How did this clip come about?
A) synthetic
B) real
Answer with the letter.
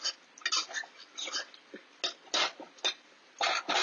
B